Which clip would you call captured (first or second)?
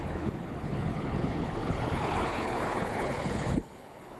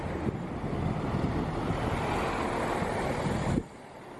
second